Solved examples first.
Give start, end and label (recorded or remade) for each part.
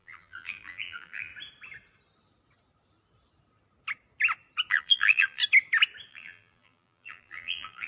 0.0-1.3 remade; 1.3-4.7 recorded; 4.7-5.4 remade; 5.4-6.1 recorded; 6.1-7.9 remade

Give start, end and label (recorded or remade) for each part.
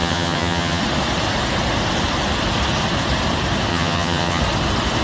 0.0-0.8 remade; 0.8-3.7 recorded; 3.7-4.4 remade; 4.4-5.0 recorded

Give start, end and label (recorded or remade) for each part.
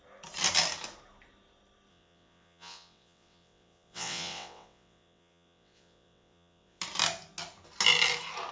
0.0-1.9 recorded; 1.9-6.8 remade; 6.8-8.5 recorded